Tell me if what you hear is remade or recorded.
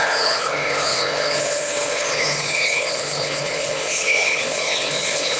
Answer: remade